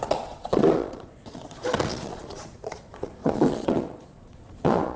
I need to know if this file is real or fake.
fake